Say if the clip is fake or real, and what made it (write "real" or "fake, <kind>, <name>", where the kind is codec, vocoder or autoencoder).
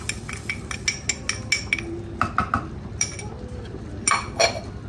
real